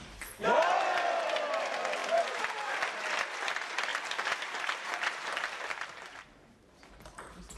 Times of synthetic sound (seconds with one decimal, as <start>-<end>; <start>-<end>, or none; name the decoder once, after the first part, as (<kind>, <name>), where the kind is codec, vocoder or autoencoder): 2.0-2.8 (vocoder, BigVGAN v2); 3.9-6.8